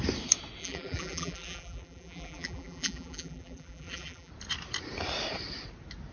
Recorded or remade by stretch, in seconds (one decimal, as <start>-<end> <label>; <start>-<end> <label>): 0.0-0.6 recorded; 0.6-4.3 remade; 4.3-6.1 recorded